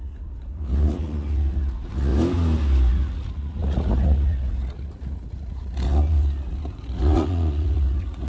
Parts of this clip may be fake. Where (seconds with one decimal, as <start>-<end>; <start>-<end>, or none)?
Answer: 0.0-2.1; 2.9-8.3